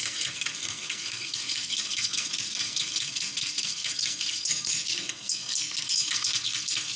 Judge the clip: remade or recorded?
remade